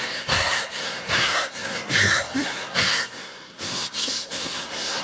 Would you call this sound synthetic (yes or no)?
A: yes